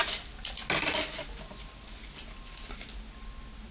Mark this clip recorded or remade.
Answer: recorded